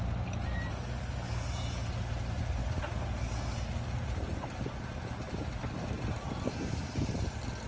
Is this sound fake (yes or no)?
no